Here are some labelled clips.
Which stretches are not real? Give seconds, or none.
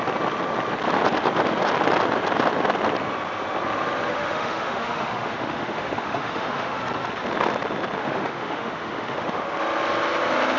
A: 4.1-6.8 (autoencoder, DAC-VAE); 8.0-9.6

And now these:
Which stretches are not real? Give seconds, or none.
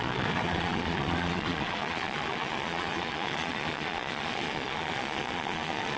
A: 0.0-6.0 (vocoder, Vocos)